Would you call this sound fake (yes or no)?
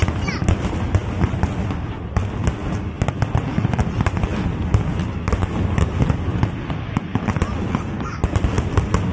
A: no